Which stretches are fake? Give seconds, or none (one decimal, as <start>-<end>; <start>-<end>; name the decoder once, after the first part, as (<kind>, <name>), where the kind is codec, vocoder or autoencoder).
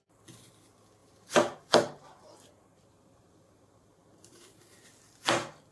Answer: 1.0-4.4 (vocoder, BigVGAN v2)